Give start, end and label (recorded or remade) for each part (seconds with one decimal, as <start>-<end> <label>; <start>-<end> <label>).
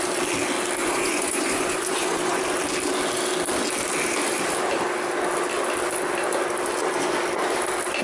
0.0-0.8 recorded; 0.8-2.4 remade; 2.4-8.0 recorded